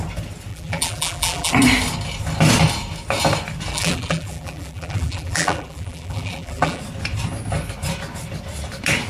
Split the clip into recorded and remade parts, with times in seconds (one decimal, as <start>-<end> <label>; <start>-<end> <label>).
0.0-0.5 recorded; 0.5-1.5 remade; 1.5-3.7 recorded; 3.7-6.8 remade; 6.8-9.1 recorded